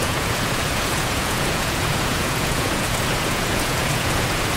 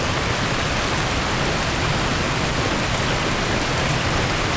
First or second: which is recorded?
second